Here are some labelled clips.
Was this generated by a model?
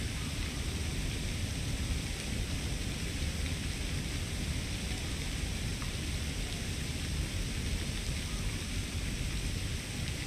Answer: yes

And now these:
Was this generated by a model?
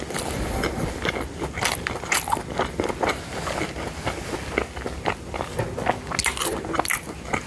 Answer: no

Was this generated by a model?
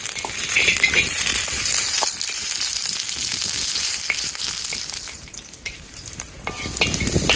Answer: no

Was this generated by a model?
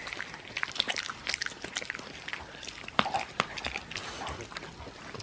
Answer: no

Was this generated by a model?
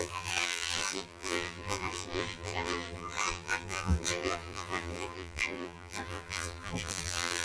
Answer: yes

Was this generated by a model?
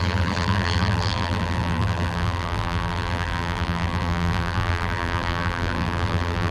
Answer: yes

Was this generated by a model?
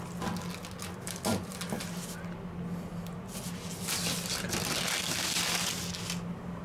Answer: no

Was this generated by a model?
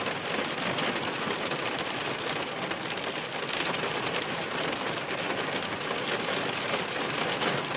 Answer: no